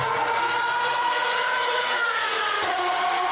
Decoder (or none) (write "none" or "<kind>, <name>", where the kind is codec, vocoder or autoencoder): vocoder, Vocos